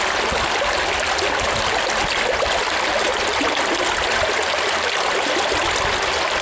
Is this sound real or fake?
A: real